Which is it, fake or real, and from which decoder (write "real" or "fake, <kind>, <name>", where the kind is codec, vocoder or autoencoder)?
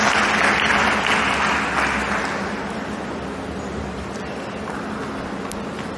real